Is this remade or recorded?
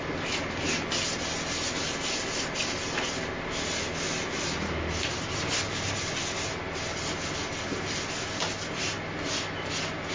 recorded